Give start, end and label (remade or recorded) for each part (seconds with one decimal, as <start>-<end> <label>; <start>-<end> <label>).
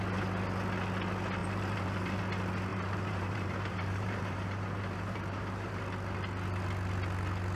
0.0-1.4 recorded; 1.4-2.2 remade; 2.2-2.7 recorded; 2.7-5.8 remade; 5.8-7.6 recorded